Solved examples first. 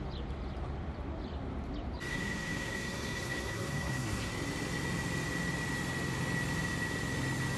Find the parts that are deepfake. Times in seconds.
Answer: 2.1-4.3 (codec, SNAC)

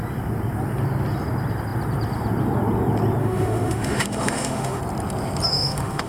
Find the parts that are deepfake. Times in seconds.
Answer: 3.2-4.8 (autoencoder, DAC-VAE); 5.5-6.1